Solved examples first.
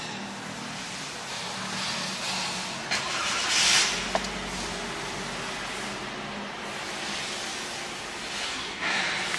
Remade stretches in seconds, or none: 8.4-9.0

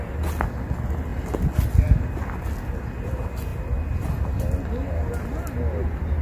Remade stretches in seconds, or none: none

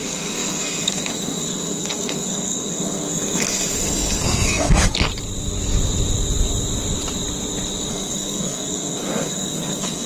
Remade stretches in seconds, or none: 0.0-5.1; 7.9-10.1

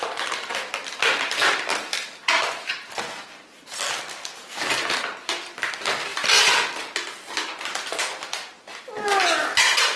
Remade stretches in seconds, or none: none

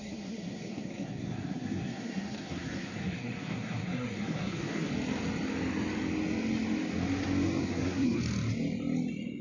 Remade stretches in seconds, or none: 0.0-4.9; 7.6-8.2